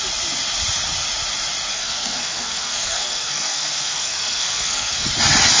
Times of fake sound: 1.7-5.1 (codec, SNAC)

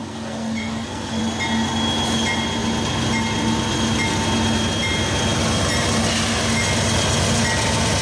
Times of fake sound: 0.0-1.2 (codec, SNAC)